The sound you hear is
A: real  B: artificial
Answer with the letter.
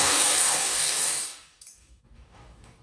B